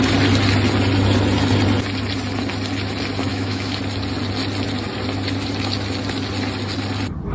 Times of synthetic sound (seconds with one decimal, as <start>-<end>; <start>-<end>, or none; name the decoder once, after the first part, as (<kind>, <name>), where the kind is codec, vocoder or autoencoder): 3.3-3.8 (autoencoder, DAC-VAE)